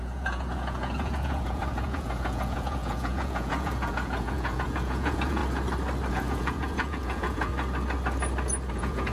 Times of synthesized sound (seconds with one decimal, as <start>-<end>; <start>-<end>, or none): 0.0-5.4; 6.1-7.5; 8.7-9.1